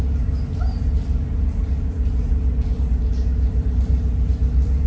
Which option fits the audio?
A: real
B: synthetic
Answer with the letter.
A